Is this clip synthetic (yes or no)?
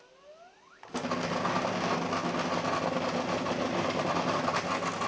no